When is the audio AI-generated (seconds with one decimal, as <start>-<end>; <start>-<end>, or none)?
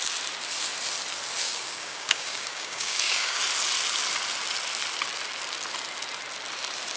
1.4-3.4